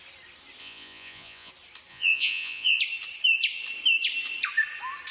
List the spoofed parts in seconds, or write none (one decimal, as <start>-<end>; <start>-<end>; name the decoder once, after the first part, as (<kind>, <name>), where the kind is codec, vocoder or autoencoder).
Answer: 0.6-1.5 (vocoder, Vocos); 1.9-2.8